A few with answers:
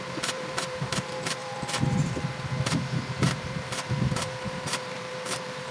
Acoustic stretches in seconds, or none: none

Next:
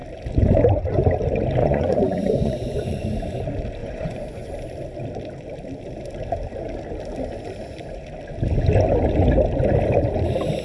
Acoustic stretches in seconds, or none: 0.0-1.6; 3.0-3.8; 4.5-10.6

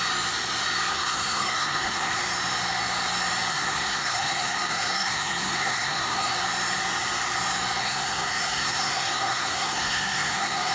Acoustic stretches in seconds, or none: 0.0-0.9; 2.2-3.5; 6.3-7.8

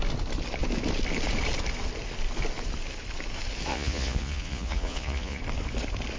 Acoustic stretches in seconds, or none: 0.0-3.7; 5.4-6.2